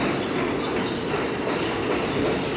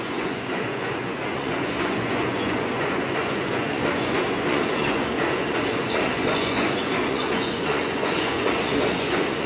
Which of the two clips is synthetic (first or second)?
second